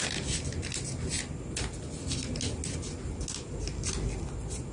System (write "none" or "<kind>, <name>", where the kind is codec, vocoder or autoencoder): none